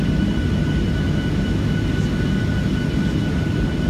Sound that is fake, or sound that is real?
real